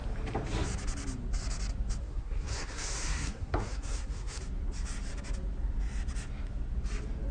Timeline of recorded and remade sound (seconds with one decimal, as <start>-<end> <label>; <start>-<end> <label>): 0.0-2.0 recorded; 2.0-4.4 remade; 4.4-7.3 recorded